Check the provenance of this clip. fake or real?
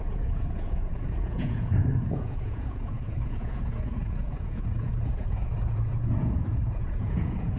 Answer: fake